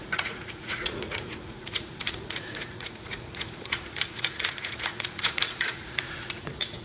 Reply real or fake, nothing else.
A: fake